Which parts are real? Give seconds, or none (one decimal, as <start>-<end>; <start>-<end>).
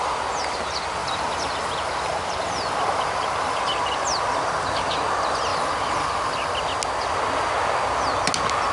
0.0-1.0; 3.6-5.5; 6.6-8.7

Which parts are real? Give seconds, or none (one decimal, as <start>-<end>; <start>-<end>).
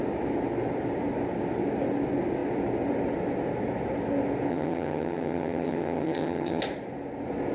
0.0-4.5; 6.6-7.5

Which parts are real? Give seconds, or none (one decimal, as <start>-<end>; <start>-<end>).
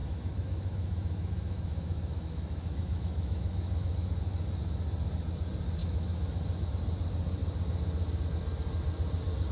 4.2-5.8; 6.7-9.5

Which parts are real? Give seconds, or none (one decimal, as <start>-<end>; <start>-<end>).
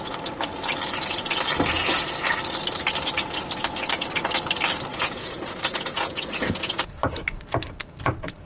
0.0-4.9; 6.9-8.5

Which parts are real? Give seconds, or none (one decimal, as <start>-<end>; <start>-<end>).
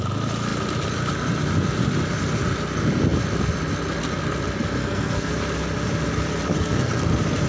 0.0-4.8; 5.3-6.5; 7.1-7.5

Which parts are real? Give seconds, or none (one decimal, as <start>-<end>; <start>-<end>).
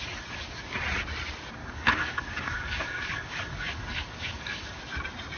0.0-1.6; 4.8-5.4